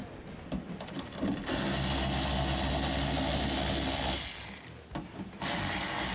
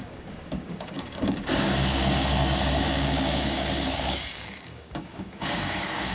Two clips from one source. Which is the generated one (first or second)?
second